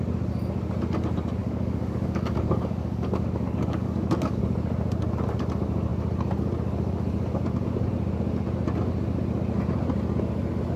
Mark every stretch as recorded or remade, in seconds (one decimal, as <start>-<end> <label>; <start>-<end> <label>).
0.0-1.4 recorded; 1.4-4.4 remade; 4.4-10.8 recorded